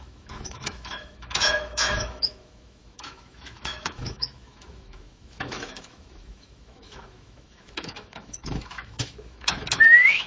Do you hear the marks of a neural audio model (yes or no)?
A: yes